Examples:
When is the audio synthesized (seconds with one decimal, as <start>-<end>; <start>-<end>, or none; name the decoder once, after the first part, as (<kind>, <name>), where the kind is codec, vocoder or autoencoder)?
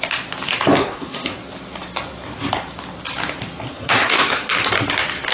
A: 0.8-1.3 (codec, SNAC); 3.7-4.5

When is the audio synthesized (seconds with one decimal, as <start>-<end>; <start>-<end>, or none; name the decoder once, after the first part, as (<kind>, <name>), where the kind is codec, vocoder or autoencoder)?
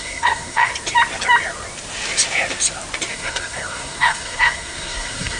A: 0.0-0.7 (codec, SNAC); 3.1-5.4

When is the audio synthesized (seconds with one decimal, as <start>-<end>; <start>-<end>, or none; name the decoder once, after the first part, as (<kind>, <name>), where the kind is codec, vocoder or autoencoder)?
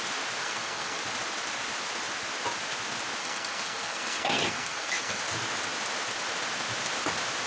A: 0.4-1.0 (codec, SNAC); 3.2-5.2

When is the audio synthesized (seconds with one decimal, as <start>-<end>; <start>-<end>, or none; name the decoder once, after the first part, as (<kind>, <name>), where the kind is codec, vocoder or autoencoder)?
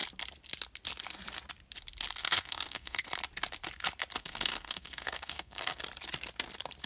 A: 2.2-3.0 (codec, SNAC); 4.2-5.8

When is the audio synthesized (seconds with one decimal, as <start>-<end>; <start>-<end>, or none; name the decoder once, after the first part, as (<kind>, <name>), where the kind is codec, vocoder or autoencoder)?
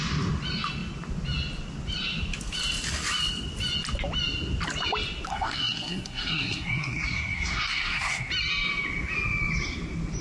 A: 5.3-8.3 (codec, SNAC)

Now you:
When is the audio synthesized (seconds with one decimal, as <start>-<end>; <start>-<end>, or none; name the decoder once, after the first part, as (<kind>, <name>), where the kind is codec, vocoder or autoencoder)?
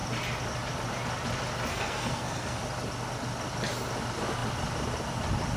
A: 1.7-2.6 (codec, SNAC)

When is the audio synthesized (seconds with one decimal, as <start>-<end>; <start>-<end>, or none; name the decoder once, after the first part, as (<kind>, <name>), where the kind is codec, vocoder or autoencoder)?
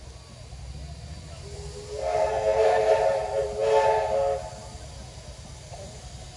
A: 2.0-2.9 (codec, SNAC)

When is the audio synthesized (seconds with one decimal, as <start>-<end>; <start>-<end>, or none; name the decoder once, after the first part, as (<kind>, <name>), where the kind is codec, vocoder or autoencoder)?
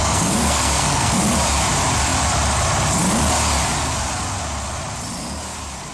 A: 0.0-1.2 (codec, SNAC)